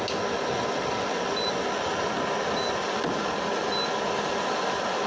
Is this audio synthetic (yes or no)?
no